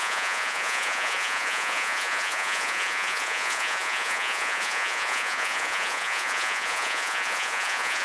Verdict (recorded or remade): remade